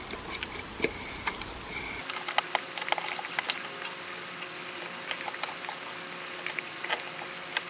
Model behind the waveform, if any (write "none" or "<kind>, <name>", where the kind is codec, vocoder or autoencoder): none